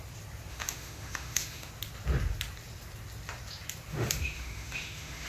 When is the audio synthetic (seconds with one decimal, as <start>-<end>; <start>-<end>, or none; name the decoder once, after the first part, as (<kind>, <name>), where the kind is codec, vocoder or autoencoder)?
0.5-1.7 (autoencoder, DAC-VAE); 3.9-5.3